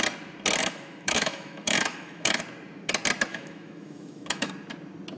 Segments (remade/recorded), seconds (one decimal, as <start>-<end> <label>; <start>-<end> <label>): 0.0-0.6 recorded; 0.6-2.4 remade; 2.4-3.3 recorded; 3.3-4.5 remade; 4.5-5.2 recorded